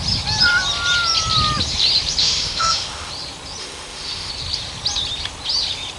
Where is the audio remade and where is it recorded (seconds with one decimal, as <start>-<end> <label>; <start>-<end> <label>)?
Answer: 0.0-2.2 recorded; 2.2-3.1 remade; 3.1-3.6 recorded; 3.6-4.3 remade; 4.3-6.0 recorded